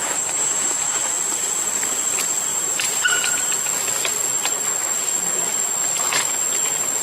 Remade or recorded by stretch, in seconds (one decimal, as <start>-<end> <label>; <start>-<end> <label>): 0.0-1.0 remade; 1.0-2.5 recorded; 2.5-3.5 remade; 3.5-7.0 recorded